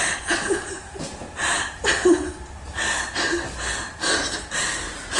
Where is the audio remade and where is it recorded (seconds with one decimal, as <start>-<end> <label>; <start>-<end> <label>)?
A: 0.0-2.0 remade; 2.0-4.2 recorded; 4.2-5.2 remade